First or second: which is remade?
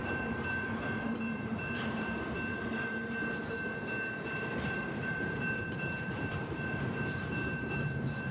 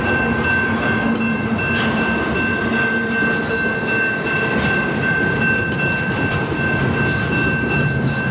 first